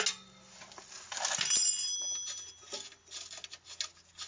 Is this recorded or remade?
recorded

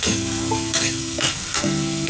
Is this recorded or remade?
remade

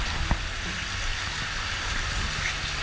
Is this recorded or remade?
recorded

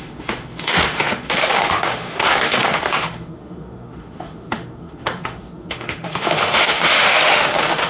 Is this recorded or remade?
remade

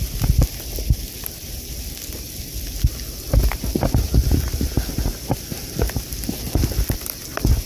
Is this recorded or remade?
recorded